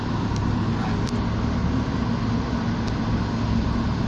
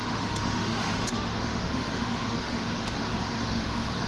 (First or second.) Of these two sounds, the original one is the first